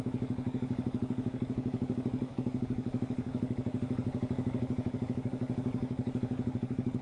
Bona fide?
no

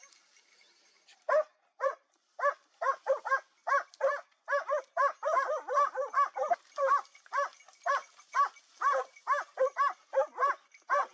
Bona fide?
yes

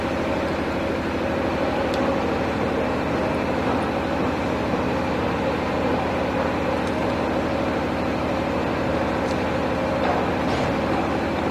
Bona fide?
yes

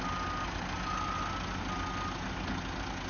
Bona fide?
yes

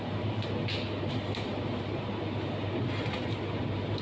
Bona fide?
yes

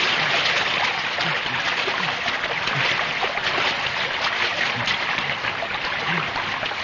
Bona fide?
yes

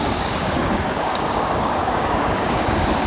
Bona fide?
no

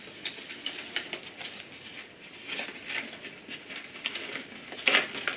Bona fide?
yes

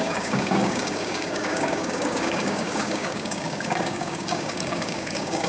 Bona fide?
no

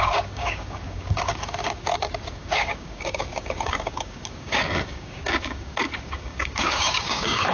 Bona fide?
no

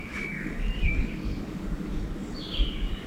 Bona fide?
no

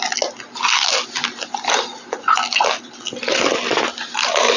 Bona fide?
yes